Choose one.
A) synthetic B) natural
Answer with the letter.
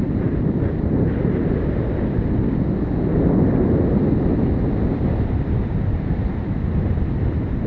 B